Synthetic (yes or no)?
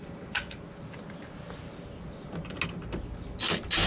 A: no